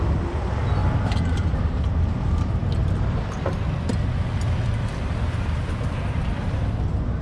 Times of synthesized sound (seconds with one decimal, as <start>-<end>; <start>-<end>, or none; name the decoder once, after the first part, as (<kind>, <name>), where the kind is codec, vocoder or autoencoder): none